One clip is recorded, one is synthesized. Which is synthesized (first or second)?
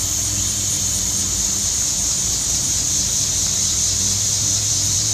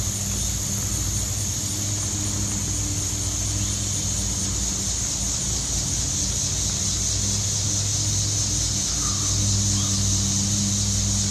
first